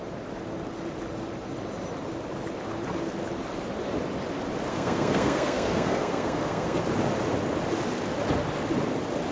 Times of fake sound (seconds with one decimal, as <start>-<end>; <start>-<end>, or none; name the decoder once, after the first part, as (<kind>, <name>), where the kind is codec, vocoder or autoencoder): 4.7-6.8 (codec, SNAC)